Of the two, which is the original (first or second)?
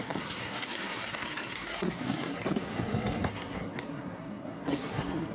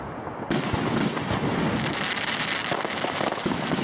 second